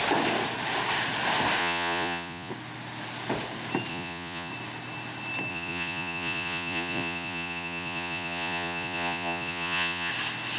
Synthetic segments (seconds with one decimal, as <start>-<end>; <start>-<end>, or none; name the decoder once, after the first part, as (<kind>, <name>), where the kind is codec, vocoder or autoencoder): 1.6-2.5 (vocoder, Vocos); 3.9-4.5; 5.5-10.1

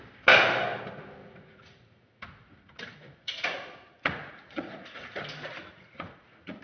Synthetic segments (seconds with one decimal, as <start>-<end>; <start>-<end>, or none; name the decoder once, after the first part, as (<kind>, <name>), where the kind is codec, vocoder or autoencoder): 1.2-5.2 (vocoder, Vocos); 5.7-6.6

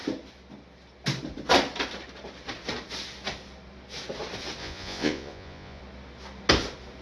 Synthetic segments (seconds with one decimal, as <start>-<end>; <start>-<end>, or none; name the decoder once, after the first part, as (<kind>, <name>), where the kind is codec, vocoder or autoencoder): 4.6-5.8 (vocoder, Vocos)

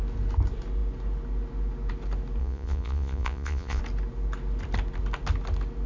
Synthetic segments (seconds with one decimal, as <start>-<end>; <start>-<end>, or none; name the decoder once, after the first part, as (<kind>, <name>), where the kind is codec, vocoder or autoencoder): 2.4-3.8 (vocoder, Vocos)

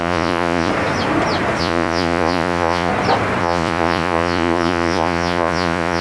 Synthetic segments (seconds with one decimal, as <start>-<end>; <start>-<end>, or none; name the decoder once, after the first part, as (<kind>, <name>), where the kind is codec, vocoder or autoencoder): 0.0-0.7 (vocoder, Vocos); 1.6-2.9; 3.4-6.0

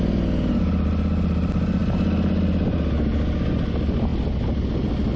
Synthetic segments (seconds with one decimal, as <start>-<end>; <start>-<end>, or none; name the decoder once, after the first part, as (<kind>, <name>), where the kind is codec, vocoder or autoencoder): none